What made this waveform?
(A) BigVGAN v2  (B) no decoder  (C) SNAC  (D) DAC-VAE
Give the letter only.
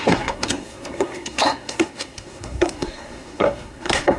C